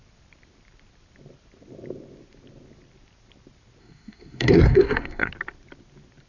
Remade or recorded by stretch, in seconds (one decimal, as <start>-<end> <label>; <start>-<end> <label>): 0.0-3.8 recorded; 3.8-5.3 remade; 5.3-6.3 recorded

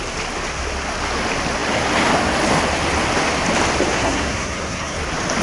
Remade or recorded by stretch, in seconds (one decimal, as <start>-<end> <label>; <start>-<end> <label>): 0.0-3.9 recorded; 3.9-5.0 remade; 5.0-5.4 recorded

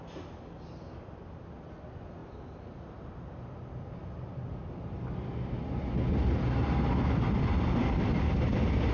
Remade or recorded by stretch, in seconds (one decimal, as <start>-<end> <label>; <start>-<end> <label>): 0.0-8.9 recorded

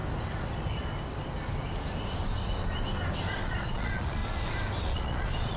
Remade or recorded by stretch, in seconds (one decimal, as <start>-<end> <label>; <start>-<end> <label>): 0.0-3.4 recorded; 3.4-4.2 remade; 4.2-4.8 recorded; 4.8-5.6 remade